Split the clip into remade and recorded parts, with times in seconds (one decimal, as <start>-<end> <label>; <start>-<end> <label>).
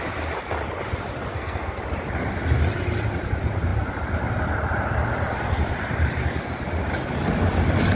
0.0-1.3 recorded; 1.3-1.8 remade; 1.8-8.0 recorded